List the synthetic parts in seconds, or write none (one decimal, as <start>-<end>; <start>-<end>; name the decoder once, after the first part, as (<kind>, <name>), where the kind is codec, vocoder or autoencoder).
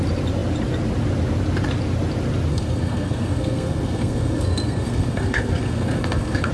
2.5-6.5 (codec, SNAC)